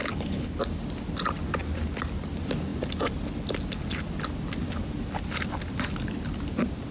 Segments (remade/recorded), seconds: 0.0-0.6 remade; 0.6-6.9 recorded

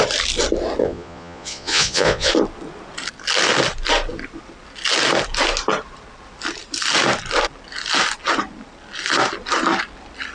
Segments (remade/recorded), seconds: 0.0-0.8 recorded; 0.8-2.3 remade; 2.3-10.3 recorded

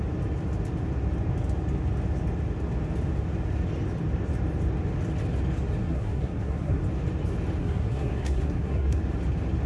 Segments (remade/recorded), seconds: 0.0-5.8 recorded; 5.8-6.8 remade; 6.8-7.6 recorded; 7.6-9.0 remade; 9.0-9.7 recorded

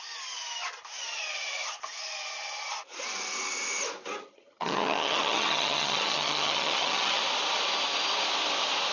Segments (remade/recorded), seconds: 0.0-4.2 recorded; 4.2-7.2 remade; 7.2-8.9 recorded

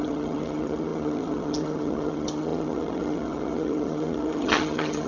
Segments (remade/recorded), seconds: 0.0-5.1 remade

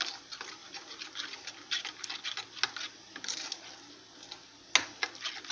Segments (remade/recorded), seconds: 0.0-5.5 recorded

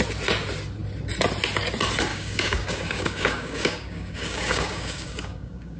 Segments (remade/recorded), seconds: 0.0-2.1 recorded; 2.1-5.8 remade

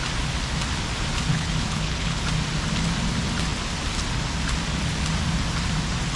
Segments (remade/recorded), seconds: 0.0-1.3 recorded; 1.3-2.2 remade; 2.2-6.2 recorded